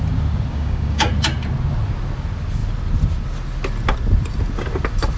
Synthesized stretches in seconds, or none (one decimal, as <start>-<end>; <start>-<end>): 0.5-1.1